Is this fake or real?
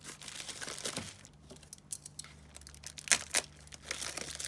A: real